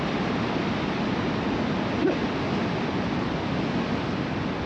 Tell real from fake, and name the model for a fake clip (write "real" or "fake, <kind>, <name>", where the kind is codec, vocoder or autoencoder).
real